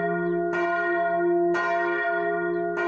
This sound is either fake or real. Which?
real